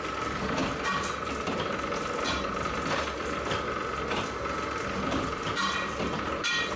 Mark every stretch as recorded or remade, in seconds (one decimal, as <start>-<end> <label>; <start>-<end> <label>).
0.0-6.8 recorded